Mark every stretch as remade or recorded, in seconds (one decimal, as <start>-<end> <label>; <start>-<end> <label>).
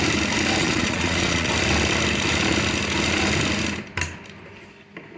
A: 0.0-0.6 recorded; 0.6-1.5 remade; 1.5-5.2 recorded